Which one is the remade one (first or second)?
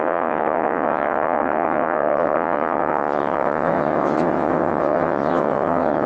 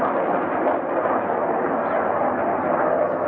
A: first